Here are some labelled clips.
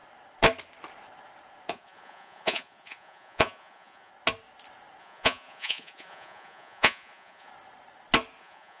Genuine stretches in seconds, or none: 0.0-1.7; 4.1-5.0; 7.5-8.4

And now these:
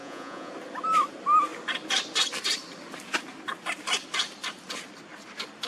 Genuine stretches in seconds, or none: 0.5-5.7

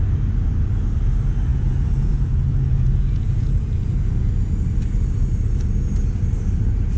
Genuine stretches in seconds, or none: 0.0-1.5; 4.3-7.0